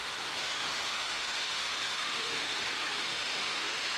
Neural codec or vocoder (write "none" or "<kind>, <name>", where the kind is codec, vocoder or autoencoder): autoencoder, DAC-VAE